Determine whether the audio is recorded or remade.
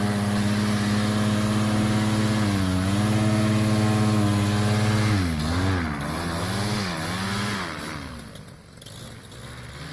recorded